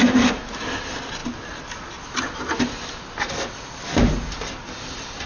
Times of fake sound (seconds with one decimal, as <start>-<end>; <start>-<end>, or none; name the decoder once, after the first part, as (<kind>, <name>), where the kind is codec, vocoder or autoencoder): none